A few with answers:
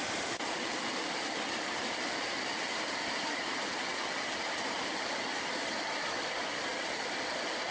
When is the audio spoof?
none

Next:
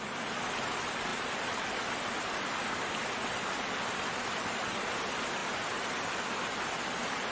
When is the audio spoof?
none

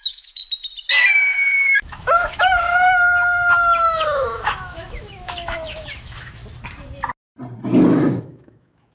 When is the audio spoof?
0.0-0.4 (autoencoder, DAC-VAE); 1.1-6.4; 8.2-8.9

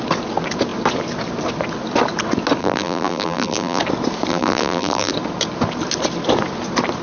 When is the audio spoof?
2.6-3.8 (vocoder, BigVGAN v2); 4.3-5.1

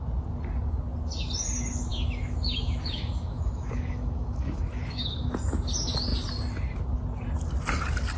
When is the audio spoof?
1.9-5.3 (autoencoder, DAC-VAE)

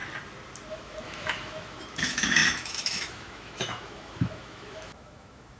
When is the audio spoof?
0.7-5.6 (autoencoder, DAC-VAE)